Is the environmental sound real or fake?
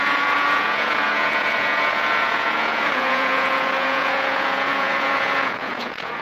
fake